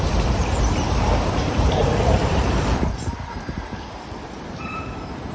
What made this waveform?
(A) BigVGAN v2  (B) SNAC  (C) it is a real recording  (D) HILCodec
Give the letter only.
A